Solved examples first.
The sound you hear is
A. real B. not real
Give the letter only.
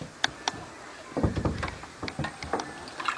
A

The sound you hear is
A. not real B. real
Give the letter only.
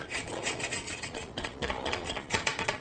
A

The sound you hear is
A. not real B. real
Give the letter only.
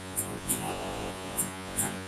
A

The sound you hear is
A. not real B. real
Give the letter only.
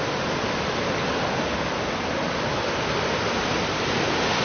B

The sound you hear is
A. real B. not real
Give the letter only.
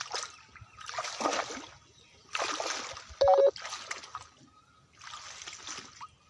A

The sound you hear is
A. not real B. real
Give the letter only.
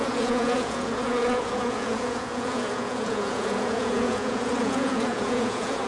A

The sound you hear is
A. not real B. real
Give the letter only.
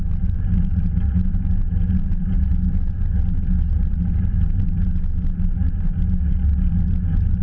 B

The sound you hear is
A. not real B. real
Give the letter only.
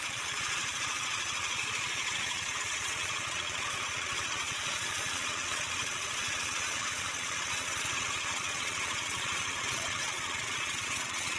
A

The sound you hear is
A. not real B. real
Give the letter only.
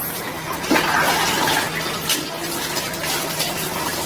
B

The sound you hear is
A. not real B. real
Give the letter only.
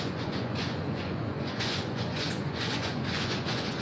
A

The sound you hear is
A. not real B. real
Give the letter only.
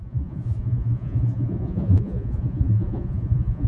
A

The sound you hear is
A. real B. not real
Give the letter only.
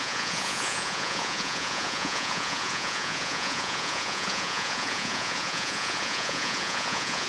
B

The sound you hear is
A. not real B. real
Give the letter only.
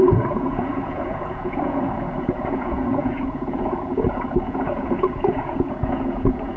A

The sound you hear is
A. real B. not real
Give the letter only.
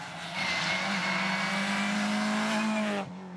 A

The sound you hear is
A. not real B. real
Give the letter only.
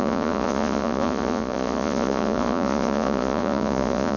A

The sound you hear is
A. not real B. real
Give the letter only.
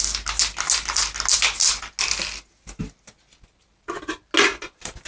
B